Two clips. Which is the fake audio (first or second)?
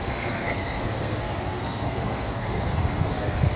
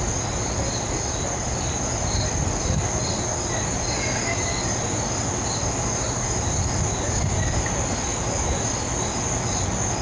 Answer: first